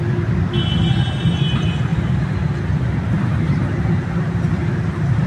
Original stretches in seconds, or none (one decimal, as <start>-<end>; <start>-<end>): 0.0-1.9